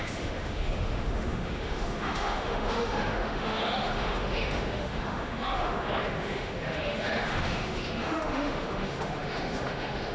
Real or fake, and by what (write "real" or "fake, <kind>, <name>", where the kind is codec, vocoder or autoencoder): fake, autoencoder, DAC-VAE